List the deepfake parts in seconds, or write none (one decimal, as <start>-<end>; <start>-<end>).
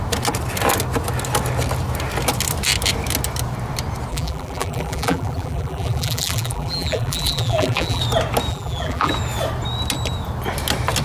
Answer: 4.1-8.0; 8.5-9.1